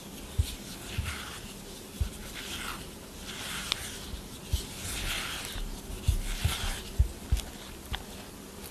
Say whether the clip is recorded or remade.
recorded